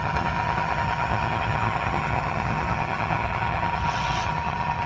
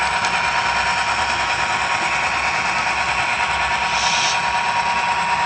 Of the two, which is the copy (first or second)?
first